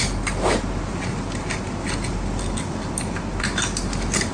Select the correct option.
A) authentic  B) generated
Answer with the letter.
A